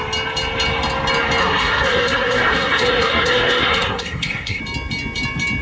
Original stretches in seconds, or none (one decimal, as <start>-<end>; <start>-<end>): 0.0-1.4; 4.6-5.6